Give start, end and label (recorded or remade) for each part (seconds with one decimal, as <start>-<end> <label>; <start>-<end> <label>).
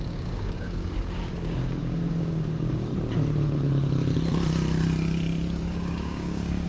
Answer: 0.0-2.9 remade; 2.9-5.7 recorded; 5.7-6.7 remade